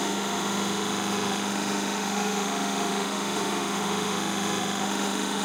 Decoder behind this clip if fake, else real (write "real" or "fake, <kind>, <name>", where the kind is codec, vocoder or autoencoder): fake, autoencoder, DAC-VAE